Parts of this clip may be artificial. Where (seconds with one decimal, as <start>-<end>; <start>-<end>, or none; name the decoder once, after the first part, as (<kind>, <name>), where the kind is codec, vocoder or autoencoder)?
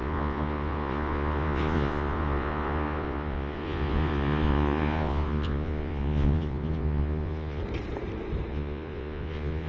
0.0-7.6 (vocoder, Vocos); 8.5-9.7